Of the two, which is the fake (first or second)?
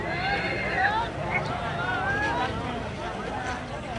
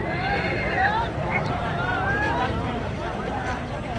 second